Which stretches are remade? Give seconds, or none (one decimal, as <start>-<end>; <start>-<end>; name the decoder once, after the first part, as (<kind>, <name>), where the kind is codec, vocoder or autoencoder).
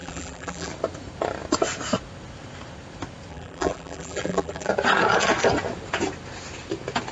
0.0-0.7 (vocoder, BigVGAN v2); 3.3-4.7